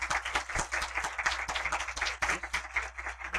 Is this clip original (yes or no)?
yes